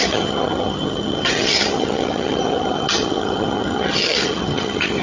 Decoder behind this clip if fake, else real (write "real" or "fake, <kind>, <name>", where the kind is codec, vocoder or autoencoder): fake, vocoder, HiFi-GAN